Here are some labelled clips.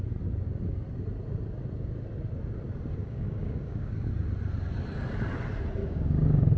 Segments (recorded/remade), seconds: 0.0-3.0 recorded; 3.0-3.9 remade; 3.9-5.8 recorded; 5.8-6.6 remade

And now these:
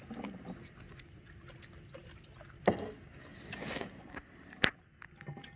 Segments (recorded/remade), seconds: 0.0-5.6 recorded

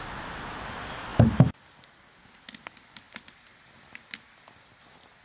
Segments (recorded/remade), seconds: 0.0-5.2 recorded

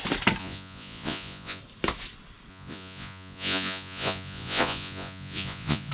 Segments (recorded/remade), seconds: 0.0-0.4 recorded; 0.4-1.6 remade; 1.6-2.5 recorded; 2.5-5.9 remade

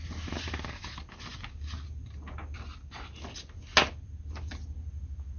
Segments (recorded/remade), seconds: 0.0-5.4 recorded

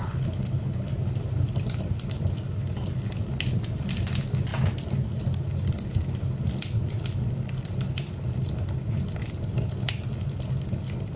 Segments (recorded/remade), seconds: 0.0-0.9 remade; 0.9-11.2 recorded

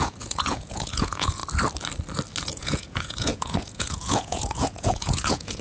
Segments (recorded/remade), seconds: 0.0-1.4 remade; 1.4-2.4 recorded; 2.4-5.6 remade